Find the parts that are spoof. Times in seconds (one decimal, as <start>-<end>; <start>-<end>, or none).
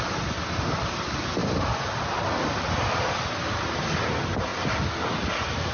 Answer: none